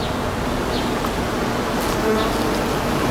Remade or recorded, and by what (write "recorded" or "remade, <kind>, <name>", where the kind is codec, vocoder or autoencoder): recorded